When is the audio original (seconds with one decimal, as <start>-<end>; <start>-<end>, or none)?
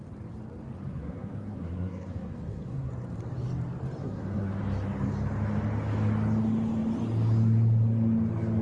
0.0-0.9; 2.9-4.0; 4.6-8.6